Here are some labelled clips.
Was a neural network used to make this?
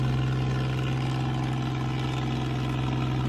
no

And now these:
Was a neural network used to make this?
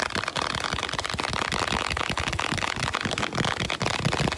no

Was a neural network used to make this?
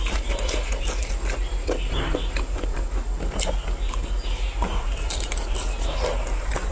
no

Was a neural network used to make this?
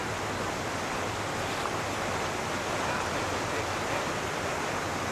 no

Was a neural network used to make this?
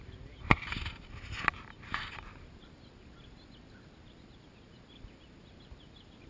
no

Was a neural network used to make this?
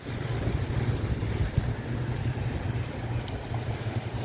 no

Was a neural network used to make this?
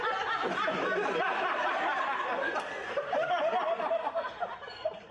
no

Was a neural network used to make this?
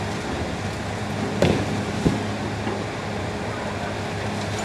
no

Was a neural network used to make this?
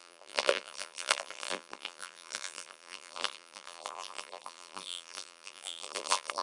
yes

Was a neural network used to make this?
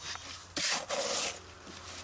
no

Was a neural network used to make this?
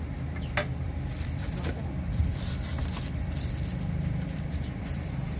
yes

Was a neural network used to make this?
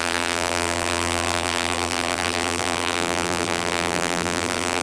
yes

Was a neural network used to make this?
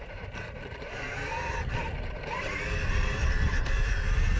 yes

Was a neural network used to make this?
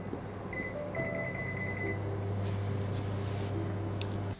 no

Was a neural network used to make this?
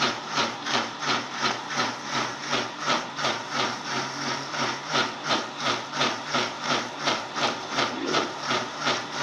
yes